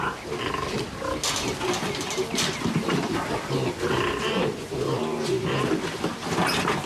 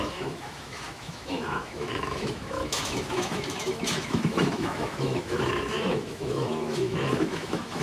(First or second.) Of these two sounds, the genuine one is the first